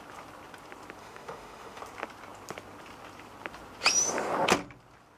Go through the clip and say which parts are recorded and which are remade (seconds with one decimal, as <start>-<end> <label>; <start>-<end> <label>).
0.0-1.0 recorded; 1.0-1.8 remade; 1.8-5.2 recorded